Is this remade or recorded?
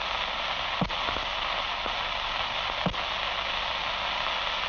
recorded